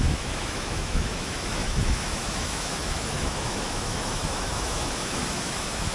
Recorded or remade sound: remade